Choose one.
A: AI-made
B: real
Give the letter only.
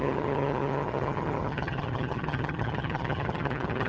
A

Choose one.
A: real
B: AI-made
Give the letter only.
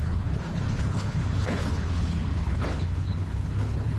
B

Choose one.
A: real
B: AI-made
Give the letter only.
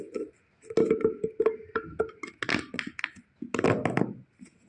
A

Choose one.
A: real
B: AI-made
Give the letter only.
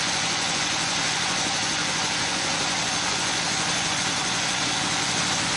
B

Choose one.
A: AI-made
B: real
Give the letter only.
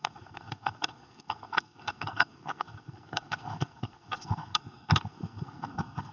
A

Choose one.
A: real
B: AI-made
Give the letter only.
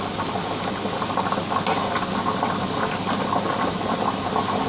A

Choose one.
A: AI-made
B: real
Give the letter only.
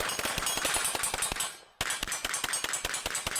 B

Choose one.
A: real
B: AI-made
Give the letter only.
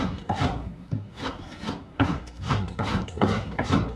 B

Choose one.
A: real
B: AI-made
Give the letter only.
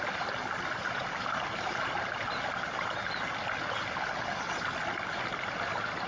A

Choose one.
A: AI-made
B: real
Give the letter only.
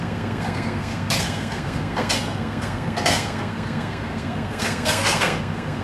A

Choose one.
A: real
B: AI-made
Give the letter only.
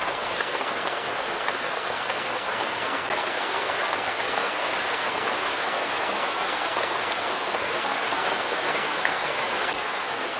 B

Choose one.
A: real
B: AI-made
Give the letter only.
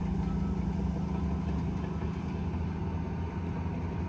A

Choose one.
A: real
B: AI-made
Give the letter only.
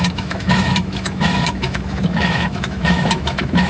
B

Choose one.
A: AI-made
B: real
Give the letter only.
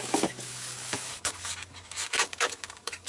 A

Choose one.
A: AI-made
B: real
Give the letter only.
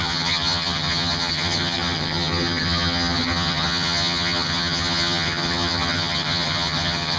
A